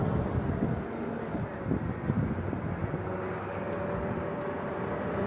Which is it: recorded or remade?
recorded